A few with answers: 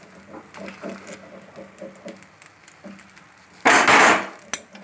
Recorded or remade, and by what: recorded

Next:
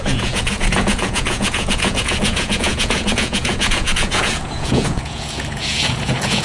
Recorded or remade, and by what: remade, vocoder, Vocos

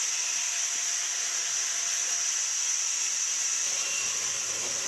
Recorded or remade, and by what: recorded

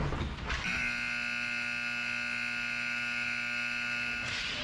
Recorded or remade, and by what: recorded